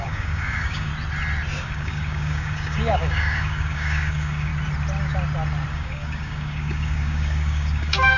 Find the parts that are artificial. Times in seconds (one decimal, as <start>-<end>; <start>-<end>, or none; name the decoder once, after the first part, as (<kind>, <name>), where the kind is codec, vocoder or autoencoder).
0.0-0.9 (codec, DAC); 1.6-4.5; 5.7-8.2